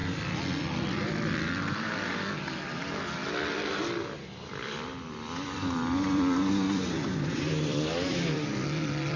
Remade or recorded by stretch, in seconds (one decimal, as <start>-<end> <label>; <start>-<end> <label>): 0.0-3.2 remade; 3.2-4.0 recorded; 4.0-9.2 remade